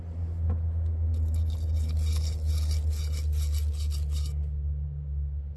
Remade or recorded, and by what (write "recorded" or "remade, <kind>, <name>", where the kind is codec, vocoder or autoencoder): recorded